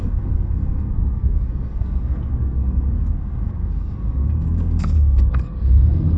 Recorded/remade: remade